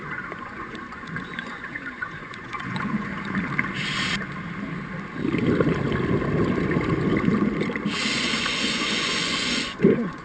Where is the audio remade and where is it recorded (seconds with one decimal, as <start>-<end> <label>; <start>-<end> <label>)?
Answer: 0.0-3.1 remade; 3.1-8.1 recorded; 8.1-10.2 remade